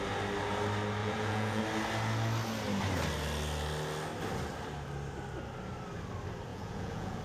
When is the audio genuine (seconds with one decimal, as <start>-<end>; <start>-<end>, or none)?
0.0-1.0; 1.6-6.5